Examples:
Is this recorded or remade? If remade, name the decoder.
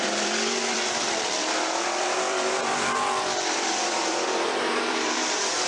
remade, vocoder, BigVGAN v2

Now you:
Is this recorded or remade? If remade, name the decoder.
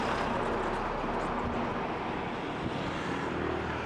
recorded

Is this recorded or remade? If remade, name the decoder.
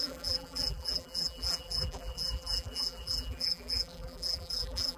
remade, vocoder, BigVGAN v2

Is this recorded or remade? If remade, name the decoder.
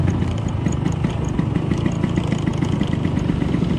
recorded